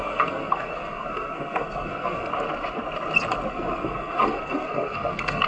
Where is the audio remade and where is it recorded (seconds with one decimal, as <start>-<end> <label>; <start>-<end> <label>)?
0.0-2.3 remade; 2.3-3.5 recorded; 3.5-5.5 remade